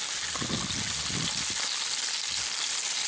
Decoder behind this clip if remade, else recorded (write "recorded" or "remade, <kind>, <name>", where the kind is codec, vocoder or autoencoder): recorded